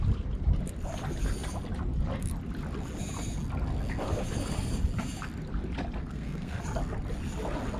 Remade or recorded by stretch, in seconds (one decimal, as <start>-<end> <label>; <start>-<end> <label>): 0.0-6.0 recorded; 6.0-6.6 remade; 6.6-7.8 recorded